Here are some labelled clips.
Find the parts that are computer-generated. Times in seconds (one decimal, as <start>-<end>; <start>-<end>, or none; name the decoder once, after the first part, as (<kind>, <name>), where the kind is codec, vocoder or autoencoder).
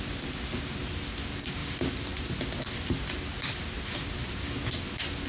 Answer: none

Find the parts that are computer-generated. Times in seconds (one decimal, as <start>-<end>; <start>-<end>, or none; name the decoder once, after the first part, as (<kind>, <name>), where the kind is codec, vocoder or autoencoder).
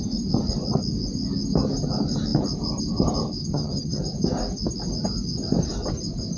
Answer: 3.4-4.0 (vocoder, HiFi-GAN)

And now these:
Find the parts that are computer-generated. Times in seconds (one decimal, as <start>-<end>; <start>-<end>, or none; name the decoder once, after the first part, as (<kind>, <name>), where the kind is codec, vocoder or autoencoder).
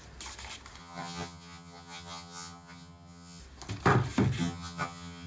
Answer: 0.8-3.4 (vocoder, HiFi-GAN); 4.4-5.3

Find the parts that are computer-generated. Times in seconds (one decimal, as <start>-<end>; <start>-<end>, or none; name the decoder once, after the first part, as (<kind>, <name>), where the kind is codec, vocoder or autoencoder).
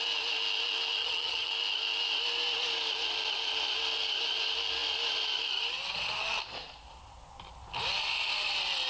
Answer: 1.0-1.5 (vocoder, HiFi-GAN)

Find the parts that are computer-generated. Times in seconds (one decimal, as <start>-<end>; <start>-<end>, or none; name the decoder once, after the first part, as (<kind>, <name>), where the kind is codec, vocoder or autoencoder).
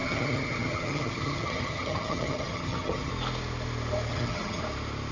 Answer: 0.0-3.1 (vocoder, HiFi-GAN); 4.1-4.6